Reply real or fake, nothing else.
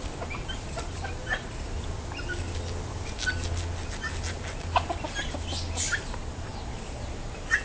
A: real